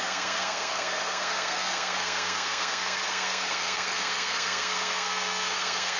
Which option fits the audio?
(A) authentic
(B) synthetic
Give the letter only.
B